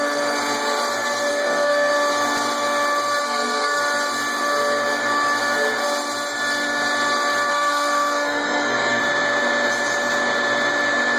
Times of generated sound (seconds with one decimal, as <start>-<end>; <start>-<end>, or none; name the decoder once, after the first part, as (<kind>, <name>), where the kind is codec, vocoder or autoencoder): 1.3-1.9 (codec, SNAC); 3.2-3.8; 7.5-9.0